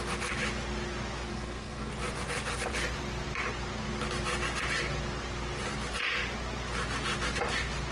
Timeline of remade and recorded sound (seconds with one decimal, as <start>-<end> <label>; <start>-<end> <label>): 0.0-1.3 recorded; 1.3-1.9 remade; 1.9-7.9 recorded